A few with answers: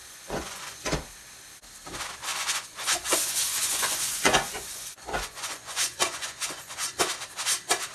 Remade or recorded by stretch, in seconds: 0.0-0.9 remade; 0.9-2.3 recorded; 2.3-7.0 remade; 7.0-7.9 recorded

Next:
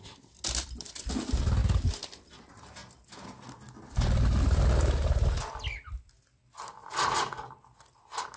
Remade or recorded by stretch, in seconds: 0.0-6.8 recorded; 6.8-7.5 remade; 7.5-8.4 recorded

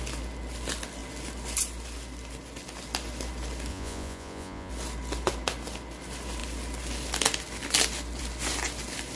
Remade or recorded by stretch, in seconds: 0.0-3.7 recorded; 3.7-4.7 remade; 4.7-9.2 recorded